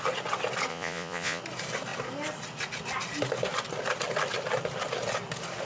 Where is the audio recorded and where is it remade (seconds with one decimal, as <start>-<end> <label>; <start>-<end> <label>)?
0.0-0.7 recorded; 0.7-1.4 remade; 1.4-5.7 recorded